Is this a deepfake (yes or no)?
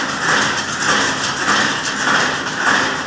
no